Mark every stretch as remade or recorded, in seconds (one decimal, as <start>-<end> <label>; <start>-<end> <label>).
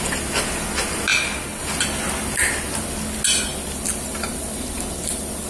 0.0-5.5 recorded